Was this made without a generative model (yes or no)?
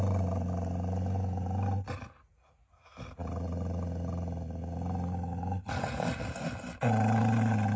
yes